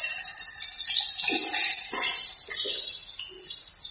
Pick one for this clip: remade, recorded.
recorded